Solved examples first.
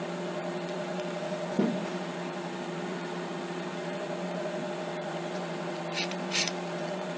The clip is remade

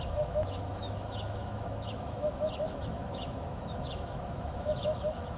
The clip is remade